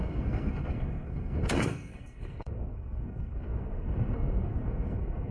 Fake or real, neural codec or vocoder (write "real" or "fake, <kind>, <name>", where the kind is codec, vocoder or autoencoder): fake, codec, SNAC